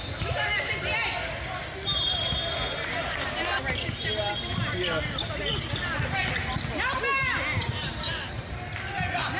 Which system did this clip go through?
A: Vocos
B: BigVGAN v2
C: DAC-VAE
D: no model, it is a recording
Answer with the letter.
D